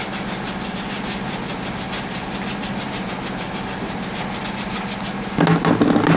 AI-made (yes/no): no